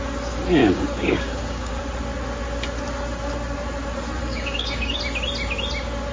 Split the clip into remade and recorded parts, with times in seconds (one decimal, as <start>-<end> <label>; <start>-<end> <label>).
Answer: 0.0-0.6 recorded; 0.6-1.8 remade; 1.8-4.2 recorded; 4.2-5.0 remade; 5.0-6.1 recorded